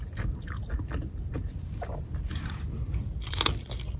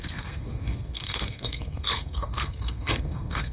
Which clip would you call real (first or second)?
first